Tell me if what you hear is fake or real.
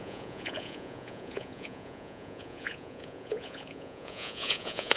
fake